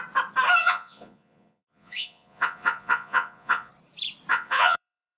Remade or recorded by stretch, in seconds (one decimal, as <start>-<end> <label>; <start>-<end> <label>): 0.0-0.6 recorded; 0.6-3.7 remade; 3.7-4.3 recorded; 4.3-5.2 remade